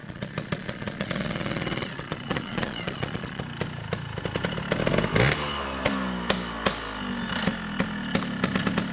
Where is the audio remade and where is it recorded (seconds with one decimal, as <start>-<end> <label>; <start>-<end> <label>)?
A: 0.0-3.4 remade; 3.4-8.9 recorded